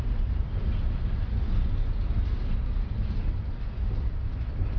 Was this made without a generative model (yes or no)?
yes